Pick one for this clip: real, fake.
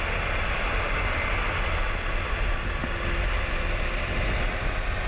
real